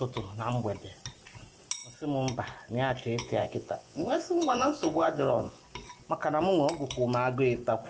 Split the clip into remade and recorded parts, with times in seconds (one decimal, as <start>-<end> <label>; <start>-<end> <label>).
0.0-3.2 recorded; 3.2-5.6 remade; 5.6-7.9 recorded